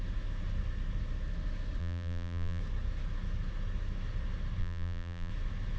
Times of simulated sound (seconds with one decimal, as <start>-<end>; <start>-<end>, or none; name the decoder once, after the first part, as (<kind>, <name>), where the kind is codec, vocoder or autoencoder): 1.8-2.6 (vocoder, BigVGAN v2); 4.6-5.3